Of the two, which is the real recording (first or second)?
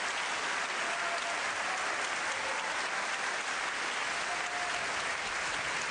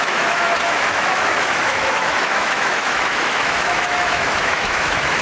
first